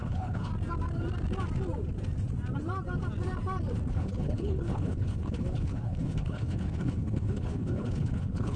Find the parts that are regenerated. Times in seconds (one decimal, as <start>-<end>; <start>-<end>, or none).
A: 0.0-0.5; 3.9-8.6